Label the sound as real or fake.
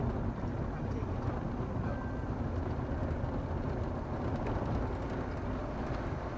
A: real